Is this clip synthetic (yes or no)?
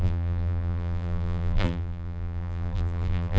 yes